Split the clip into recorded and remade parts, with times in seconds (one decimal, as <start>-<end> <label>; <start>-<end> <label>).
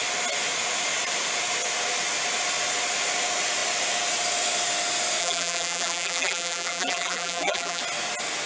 0.0-5.2 recorded; 5.2-7.8 remade; 7.8-8.5 recorded